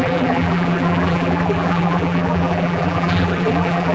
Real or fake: fake